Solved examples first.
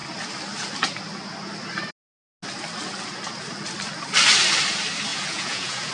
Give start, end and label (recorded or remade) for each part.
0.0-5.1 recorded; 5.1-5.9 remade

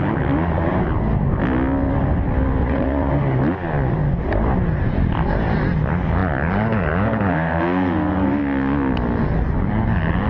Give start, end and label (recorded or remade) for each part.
0.0-2.6 recorded; 2.6-3.1 remade; 3.1-10.3 recorded

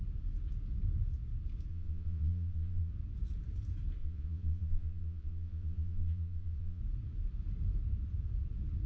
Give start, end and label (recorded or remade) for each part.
0.0-1.7 recorded; 1.7-2.9 remade; 2.9-4.0 recorded; 4.0-6.8 remade; 6.8-8.9 recorded

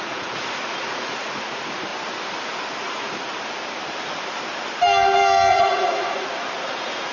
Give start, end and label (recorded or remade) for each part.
0.0-1.9 remade; 1.9-2.8 recorded; 2.8-3.3 remade; 3.3-5.5 recorded; 5.5-7.1 remade

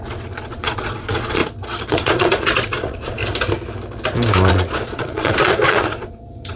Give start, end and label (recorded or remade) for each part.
0.0-1.4 remade; 1.4-1.9 recorded; 1.9-3.2 remade; 3.2-4.5 recorded; 4.5-6.6 remade

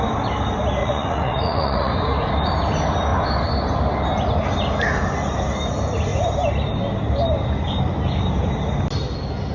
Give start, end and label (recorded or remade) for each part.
0.0-0.8 recorded; 0.8-1.9 remade; 1.9-9.5 recorded

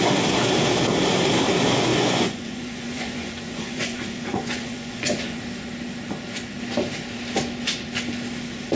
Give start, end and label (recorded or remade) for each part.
0.0-1.9 recorded; 1.9-5.4 remade; 5.4-8.8 recorded

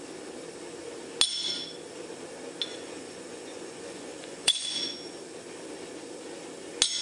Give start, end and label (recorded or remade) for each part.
0.0-2.7 recorded; 2.7-5.2 remade; 5.2-7.0 recorded